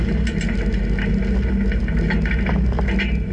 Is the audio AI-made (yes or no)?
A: no